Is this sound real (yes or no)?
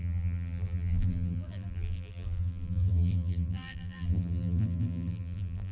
no